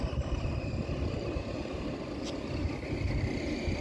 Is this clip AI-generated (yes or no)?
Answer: no